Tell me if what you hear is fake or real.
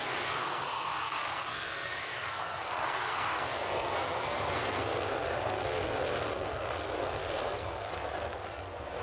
fake